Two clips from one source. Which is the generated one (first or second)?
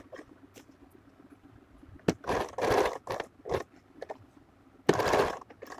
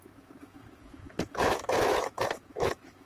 second